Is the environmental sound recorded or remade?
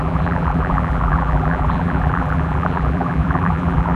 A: remade